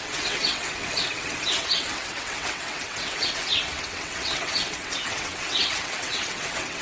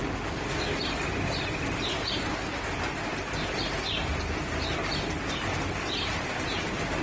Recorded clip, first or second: second